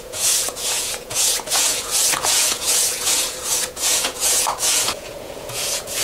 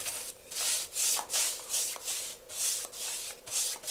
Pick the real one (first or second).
second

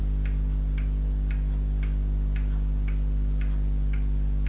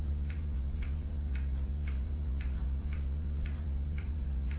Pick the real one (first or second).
first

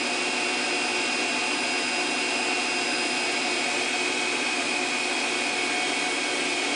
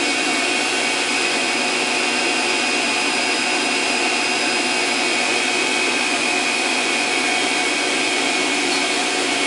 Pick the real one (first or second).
first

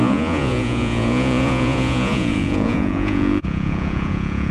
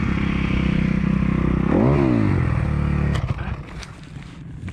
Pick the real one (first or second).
second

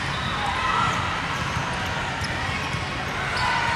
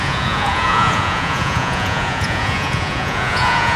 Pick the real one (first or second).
first